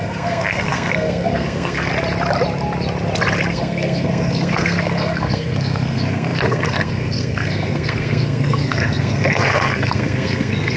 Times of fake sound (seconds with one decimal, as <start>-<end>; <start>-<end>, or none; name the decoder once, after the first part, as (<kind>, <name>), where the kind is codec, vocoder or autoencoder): 0.0-1.9 (codec, SNAC); 3.5-10.8